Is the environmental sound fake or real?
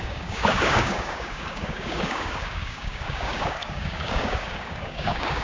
fake